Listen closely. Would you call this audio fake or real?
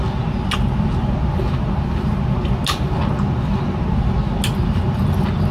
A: real